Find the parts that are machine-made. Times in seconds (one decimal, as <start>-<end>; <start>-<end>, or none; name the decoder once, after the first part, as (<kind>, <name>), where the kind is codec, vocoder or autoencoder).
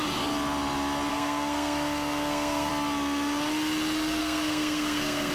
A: 1.1-2.7 (codec, SNAC); 4.2-5.3